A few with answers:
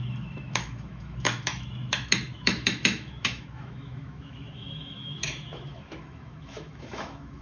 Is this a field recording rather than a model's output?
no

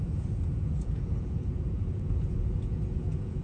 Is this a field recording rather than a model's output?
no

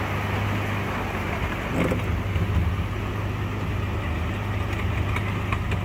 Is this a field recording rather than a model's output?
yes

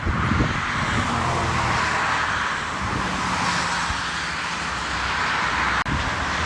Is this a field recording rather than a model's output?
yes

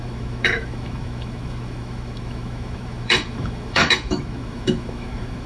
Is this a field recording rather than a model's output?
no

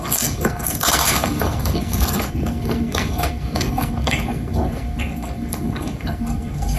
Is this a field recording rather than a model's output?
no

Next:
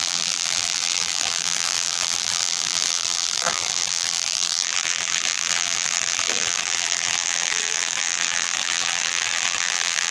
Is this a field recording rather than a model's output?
no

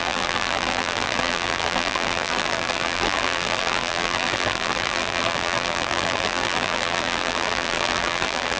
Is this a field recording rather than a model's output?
no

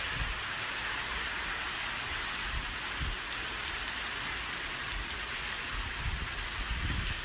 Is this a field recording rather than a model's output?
yes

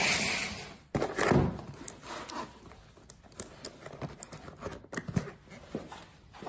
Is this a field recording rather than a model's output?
yes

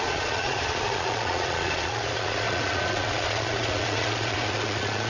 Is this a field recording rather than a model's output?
no